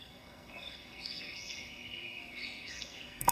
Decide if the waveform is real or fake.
fake